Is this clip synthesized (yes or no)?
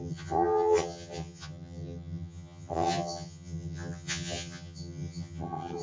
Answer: yes